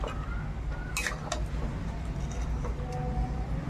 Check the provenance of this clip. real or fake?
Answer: real